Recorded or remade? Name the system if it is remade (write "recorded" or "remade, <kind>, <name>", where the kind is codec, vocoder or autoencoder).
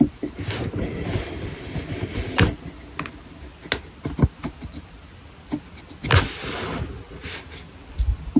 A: recorded